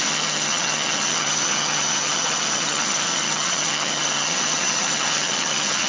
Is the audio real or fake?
fake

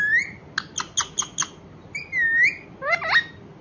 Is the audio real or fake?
real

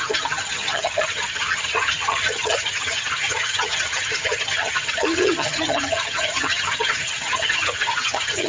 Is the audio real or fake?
fake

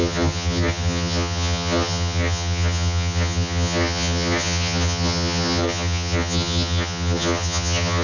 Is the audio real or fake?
fake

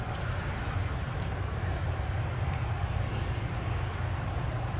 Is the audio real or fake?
real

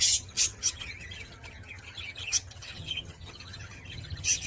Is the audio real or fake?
fake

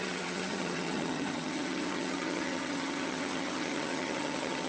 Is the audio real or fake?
fake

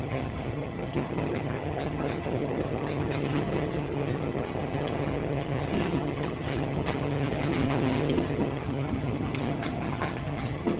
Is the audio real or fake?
fake